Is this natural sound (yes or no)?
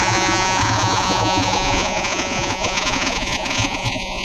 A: no